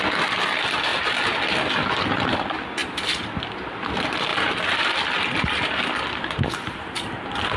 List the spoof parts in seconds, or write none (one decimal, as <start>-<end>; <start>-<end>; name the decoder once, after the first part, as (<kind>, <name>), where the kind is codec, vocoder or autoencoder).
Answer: 2.8-3.4 (vocoder, BigVGAN v2); 4.3-7.6